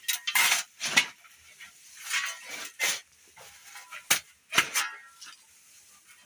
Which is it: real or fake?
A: real